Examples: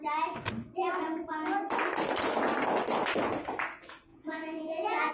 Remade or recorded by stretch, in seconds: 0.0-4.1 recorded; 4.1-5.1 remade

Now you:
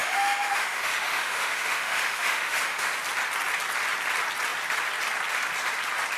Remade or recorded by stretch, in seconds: 0.0-2.9 remade; 2.9-6.2 recorded